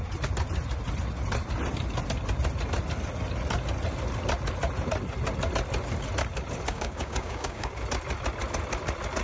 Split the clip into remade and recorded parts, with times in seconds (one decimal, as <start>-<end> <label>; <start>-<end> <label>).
0.0-6.7 recorded; 6.7-7.7 remade; 7.7-9.2 recorded